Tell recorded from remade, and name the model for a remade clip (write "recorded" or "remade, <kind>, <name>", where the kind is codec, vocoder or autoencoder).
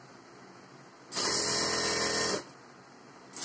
recorded